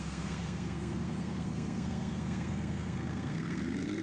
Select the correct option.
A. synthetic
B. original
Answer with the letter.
A